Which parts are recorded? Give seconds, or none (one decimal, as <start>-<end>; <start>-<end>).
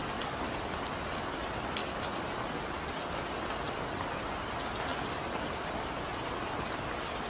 0.0-7.3